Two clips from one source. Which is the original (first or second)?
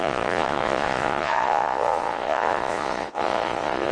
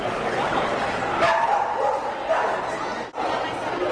second